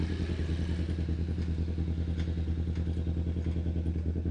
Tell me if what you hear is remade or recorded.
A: recorded